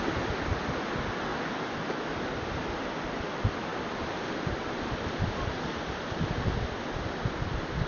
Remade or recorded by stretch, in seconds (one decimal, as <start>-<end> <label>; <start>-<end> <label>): 0.0-7.9 recorded